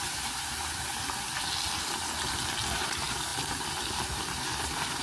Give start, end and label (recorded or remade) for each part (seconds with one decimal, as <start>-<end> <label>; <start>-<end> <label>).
0.0-0.9 remade; 0.9-2.6 recorded; 2.6-3.3 remade; 3.3-3.9 recorded; 3.9-5.0 remade